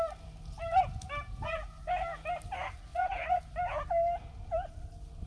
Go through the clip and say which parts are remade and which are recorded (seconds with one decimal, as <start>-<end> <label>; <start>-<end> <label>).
0.0-2.9 recorded; 2.9-3.4 remade; 3.4-5.3 recorded